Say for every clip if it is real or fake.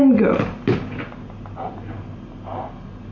real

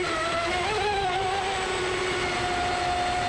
real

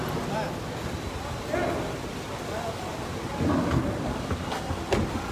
real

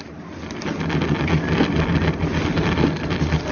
real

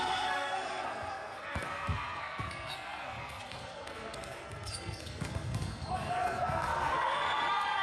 fake